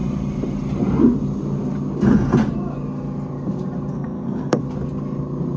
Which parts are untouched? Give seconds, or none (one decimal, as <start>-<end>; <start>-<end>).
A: 0.0-3.9; 4.6-5.6